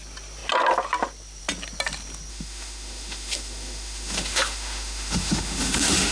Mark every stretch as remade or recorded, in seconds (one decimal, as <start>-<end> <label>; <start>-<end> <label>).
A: 0.0-2.3 recorded; 2.3-6.1 remade